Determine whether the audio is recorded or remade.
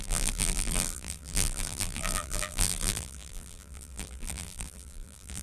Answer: remade